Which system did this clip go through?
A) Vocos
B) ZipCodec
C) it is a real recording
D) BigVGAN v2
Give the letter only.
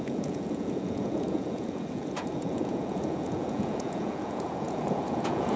A